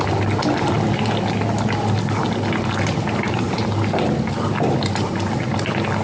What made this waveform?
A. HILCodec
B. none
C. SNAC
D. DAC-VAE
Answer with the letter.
B